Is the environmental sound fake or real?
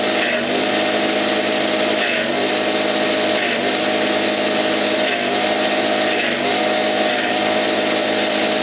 real